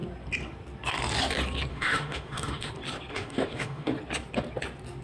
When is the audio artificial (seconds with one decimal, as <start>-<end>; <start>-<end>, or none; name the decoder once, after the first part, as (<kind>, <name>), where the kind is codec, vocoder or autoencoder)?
1.7-2.7 (autoencoder, DAC-VAE); 3.1-3.9

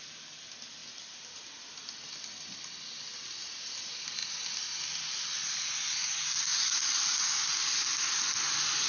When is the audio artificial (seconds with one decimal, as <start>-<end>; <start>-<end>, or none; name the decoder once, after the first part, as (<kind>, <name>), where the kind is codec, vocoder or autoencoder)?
none

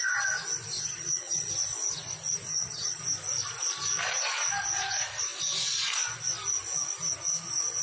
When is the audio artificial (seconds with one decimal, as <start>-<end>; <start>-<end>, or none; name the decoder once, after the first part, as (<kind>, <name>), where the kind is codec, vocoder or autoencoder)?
0.8-1.5 (vocoder, HiFi-GAN); 2.5-3.0

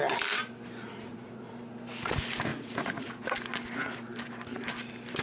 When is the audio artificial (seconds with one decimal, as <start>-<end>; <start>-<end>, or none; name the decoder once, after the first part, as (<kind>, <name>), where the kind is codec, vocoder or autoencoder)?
0.8-1.5 (vocoder, Vocos); 2.5-3.2

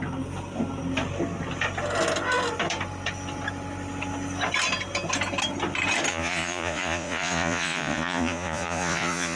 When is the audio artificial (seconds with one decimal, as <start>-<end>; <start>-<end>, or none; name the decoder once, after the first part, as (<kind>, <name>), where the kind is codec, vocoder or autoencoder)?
6.1-9.4 (vocoder, Vocos)

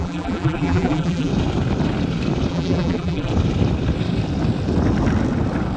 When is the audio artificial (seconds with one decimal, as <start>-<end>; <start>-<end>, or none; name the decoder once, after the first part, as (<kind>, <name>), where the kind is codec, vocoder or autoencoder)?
0.0-1.3 (vocoder, BigVGAN v2); 2.5-3.3

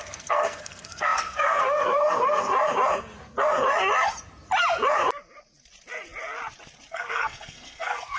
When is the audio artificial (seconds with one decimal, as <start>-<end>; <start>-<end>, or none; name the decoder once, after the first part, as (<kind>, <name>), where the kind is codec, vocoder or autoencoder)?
0.0-2.5 (codec, SNAC); 6.9-8.2